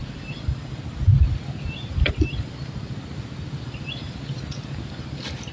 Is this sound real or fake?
real